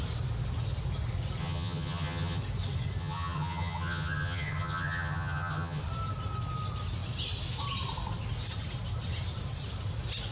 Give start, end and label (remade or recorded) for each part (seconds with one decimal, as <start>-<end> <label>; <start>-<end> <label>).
0.0-1.4 recorded; 1.4-2.4 remade; 2.4-3.0 recorded; 3.0-5.8 remade; 5.8-10.3 recorded